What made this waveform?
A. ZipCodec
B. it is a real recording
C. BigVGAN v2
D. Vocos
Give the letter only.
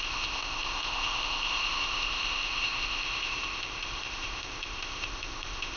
A